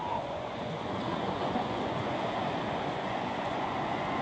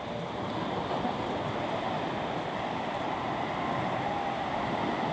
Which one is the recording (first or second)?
second